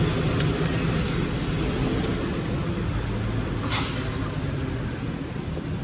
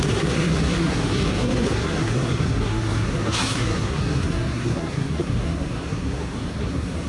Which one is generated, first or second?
second